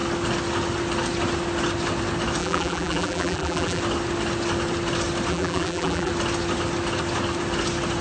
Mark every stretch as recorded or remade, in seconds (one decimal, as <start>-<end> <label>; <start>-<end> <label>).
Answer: 0.0-2.4 recorded; 2.4-3.8 remade; 3.8-5.3 recorded; 5.3-6.1 remade; 6.1-8.0 recorded